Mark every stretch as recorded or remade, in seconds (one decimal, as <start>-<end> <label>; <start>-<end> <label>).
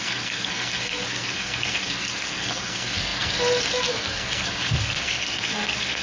0.0-6.0 remade